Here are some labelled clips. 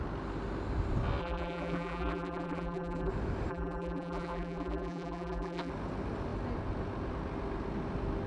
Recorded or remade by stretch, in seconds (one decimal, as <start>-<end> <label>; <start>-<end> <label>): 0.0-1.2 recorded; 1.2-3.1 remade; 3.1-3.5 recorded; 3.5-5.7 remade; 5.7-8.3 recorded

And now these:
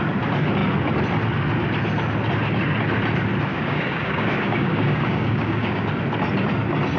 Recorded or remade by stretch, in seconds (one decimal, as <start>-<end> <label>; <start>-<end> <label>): 0.0-3.5 recorded; 3.5-5.9 remade; 5.9-7.0 recorded

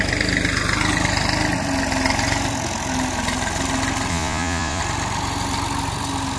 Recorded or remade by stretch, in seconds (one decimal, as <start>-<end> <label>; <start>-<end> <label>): 0.0-4.1 recorded; 4.1-4.8 remade; 4.8-6.4 recorded